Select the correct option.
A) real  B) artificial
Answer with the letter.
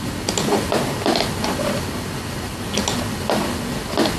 A